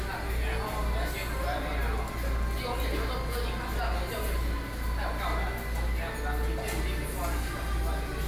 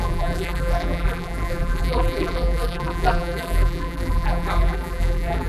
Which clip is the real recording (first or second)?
first